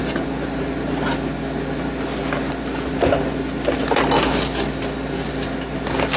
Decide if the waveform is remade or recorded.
recorded